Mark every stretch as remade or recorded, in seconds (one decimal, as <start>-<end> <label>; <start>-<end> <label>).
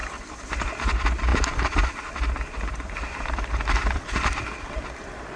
0.0-0.6 remade; 0.6-1.3 recorded; 1.3-4.5 remade; 4.5-5.4 recorded